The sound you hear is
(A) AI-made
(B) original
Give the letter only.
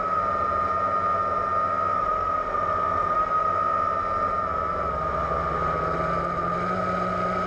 B